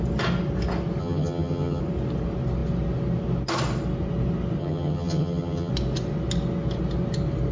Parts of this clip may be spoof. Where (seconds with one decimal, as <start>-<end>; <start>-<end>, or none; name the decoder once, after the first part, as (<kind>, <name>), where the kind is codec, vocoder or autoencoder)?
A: 1.0-1.8 (vocoder, HiFi-GAN); 4.6-5.7